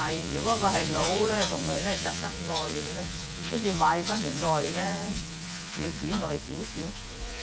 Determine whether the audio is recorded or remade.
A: remade